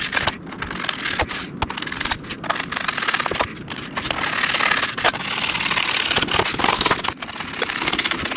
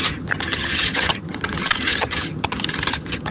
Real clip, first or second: first